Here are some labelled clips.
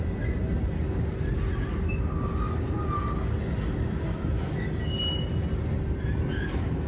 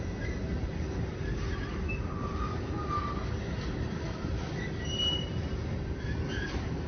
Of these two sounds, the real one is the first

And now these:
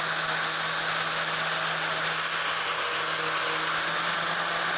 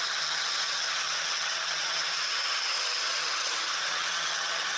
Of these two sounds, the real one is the first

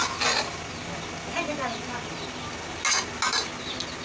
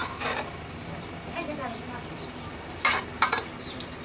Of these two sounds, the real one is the first